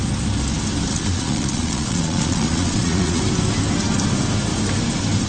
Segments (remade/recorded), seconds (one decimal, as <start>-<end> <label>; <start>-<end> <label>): 0.0-0.9 recorded; 0.9-3.2 remade; 3.2-5.3 recorded